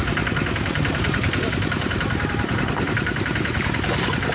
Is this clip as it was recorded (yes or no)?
no